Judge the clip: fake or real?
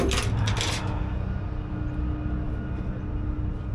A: real